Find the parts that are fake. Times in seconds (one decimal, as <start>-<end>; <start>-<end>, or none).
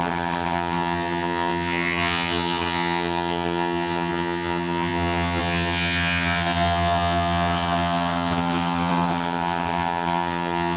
0.0-10.8